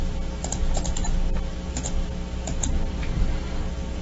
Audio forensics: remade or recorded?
recorded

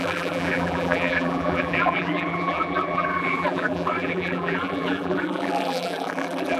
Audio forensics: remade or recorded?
remade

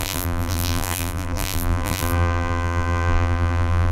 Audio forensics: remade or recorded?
remade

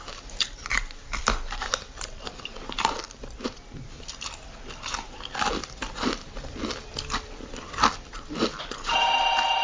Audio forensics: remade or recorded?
remade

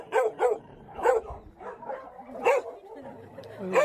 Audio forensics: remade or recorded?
remade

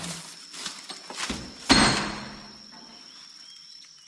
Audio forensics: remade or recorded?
recorded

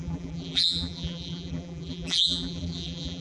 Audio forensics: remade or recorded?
remade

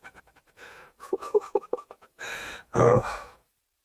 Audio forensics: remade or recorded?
recorded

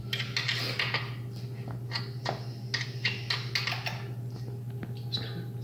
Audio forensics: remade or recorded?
recorded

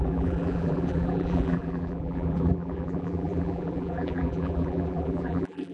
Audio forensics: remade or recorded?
remade